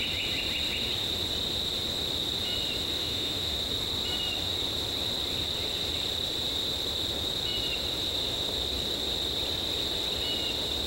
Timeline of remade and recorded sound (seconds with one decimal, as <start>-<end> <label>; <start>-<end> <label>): 0.0-3.0 recorded; 3.0-3.6 remade; 3.6-10.9 recorded